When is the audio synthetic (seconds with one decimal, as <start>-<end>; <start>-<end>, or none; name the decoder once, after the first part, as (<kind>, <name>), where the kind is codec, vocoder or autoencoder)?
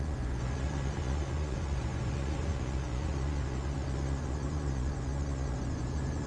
0.0-6.3 (vocoder, Vocos)